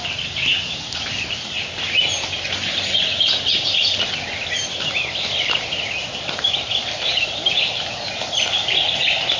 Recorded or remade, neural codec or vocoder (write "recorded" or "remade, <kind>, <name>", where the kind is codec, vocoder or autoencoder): recorded